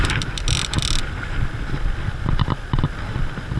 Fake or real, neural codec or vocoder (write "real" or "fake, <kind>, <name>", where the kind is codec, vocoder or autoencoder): real